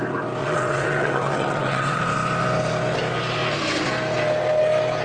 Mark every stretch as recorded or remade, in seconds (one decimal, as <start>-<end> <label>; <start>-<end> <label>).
0.0-0.4 recorded; 0.4-2.0 remade; 2.0-5.0 recorded